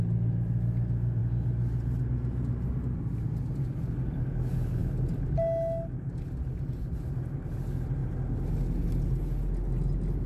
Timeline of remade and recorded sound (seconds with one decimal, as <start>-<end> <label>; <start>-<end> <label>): 0.0-10.3 recorded